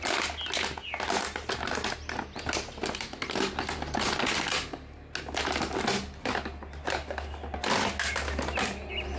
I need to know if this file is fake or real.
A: real